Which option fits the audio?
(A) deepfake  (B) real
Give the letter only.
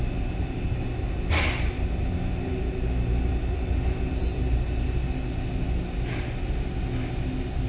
B